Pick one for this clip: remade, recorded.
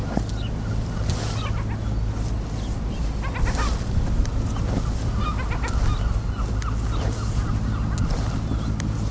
recorded